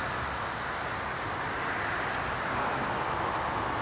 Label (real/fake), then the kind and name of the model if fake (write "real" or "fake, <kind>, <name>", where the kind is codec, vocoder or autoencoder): real